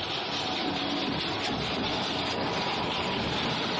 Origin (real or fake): real